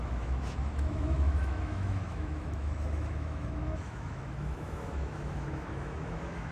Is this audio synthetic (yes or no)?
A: yes